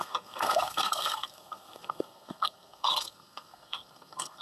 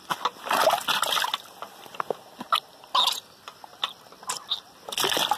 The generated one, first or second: first